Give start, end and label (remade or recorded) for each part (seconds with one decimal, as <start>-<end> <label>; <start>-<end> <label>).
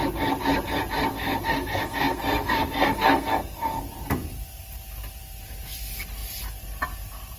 0.0-1.1 recorded; 1.1-3.8 remade; 3.8-7.4 recorded